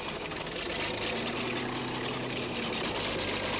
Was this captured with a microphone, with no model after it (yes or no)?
yes